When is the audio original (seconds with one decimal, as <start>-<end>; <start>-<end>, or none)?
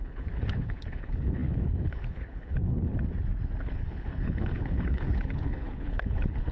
2.9-3.6